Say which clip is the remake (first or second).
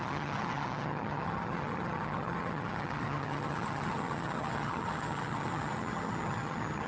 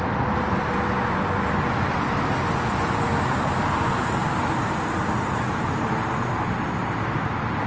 first